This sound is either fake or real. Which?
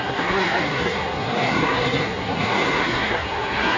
fake